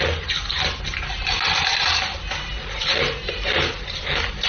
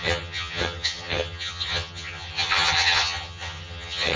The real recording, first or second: first